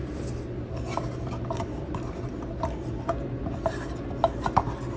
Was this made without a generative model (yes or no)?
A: yes